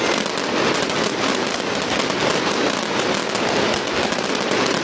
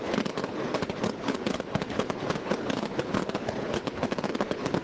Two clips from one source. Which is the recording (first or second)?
first